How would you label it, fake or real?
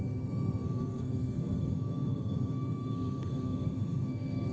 fake